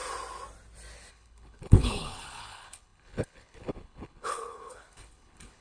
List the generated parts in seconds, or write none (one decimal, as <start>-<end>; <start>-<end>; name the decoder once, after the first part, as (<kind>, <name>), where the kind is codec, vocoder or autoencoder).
1.1-5.6 (codec, HILCodec)